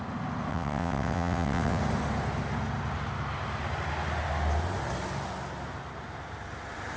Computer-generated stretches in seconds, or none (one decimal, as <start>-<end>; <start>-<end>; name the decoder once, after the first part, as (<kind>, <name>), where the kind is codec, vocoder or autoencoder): 0.5-1.8 (vocoder, WaveNeXt)